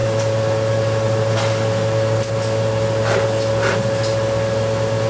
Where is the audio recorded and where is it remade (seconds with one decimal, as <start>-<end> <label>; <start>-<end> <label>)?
0.0-5.1 recorded